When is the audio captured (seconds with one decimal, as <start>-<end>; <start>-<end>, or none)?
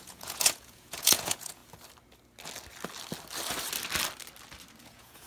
1.6-4.8